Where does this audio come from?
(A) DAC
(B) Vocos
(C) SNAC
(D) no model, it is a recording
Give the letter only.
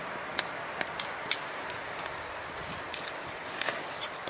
D